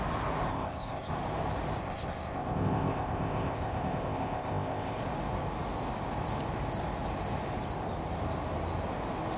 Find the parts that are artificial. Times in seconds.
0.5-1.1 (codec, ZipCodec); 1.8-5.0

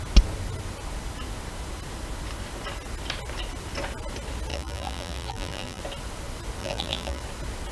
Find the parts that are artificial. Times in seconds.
4.5-5.8 (vocoder, BigVGAN v2); 6.6-7.2

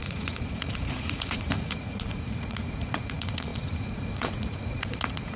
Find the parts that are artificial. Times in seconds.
0.0-5.4 (vocoder, Vocos)

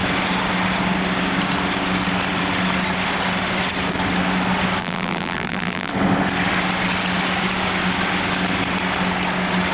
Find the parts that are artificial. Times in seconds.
4.8-5.9 (vocoder, BigVGAN v2)

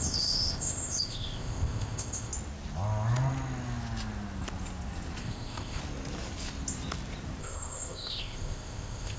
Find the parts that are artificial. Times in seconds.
0.0-2.3 (codec, ZipCodec); 5.2-5.8; 7.4-9.2

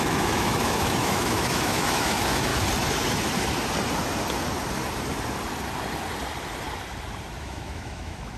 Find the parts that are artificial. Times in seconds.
0.0-2.5 (autoencoder, DAC-VAE); 7.4-8.4

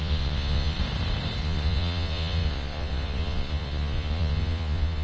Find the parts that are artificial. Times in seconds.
0.0-0.8 (vocoder, Vocos); 1.4-5.0

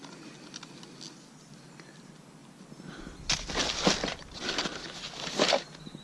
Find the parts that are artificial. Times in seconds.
none